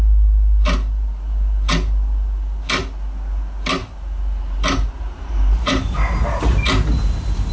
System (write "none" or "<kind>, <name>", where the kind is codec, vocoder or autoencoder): none